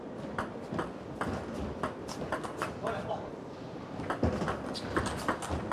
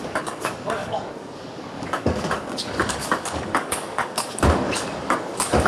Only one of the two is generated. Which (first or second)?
second